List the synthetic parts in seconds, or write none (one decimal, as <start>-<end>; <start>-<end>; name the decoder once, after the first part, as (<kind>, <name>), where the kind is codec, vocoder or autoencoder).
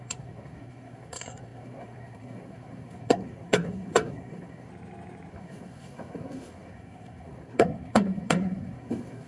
0.0-4.7 (codec, SNAC); 5.3-9.3